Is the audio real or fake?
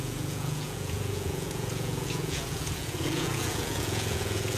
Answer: fake